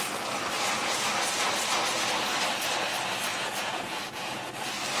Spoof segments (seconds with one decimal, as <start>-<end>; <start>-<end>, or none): 3.3-4.5